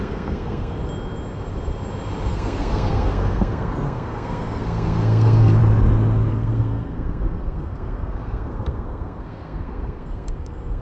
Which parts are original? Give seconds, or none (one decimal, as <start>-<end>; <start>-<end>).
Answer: 0.8-2.3; 5.6-6.3